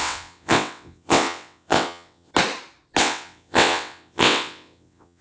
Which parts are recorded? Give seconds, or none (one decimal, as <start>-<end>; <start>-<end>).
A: 2.3-3.0